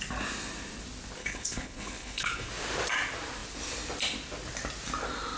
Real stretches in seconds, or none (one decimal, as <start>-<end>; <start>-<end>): 0.0-1.2; 2.5-5.4